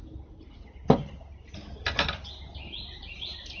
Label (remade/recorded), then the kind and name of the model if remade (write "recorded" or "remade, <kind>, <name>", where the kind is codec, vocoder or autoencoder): remade, vocoder, BigVGAN v2